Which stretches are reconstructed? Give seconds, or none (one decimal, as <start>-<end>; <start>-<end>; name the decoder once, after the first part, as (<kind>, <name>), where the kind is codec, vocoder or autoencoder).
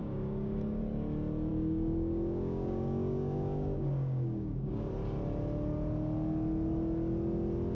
0.0-0.8 (codec, DAC); 1.5-4.9